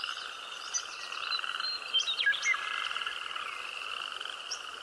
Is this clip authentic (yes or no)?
yes